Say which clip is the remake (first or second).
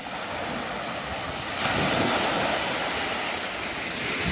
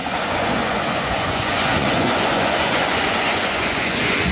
second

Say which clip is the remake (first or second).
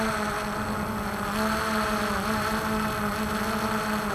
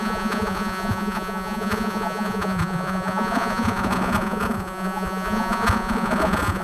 second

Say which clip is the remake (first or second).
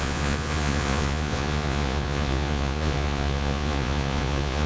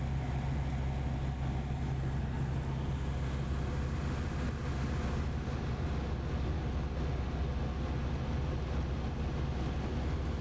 first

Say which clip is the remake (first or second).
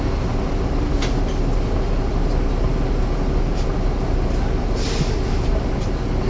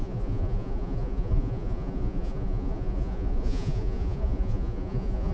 second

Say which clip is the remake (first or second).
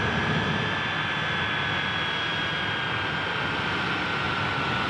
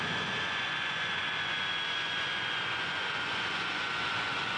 second